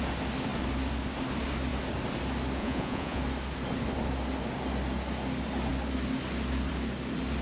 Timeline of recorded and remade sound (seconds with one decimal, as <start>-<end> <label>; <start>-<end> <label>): 0.0-2.6 recorded; 2.6-3.2 remade; 3.2-7.4 recorded